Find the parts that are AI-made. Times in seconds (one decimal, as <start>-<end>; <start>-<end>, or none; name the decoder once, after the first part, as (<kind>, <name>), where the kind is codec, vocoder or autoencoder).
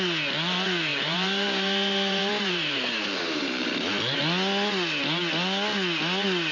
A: 0.9-3.9 (vocoder, BigVGAN v2)